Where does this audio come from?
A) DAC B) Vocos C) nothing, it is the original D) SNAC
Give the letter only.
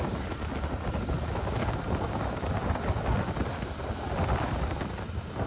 C